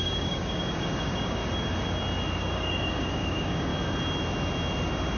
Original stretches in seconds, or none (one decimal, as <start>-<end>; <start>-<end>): 1.4-2.3; 3.7-5.2